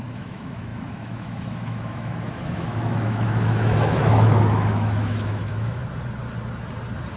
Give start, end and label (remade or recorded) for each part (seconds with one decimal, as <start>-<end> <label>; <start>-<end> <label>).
0.0-5.8 remade; 5.8-7.2 recorded